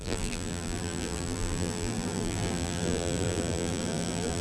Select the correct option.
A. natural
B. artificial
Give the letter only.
B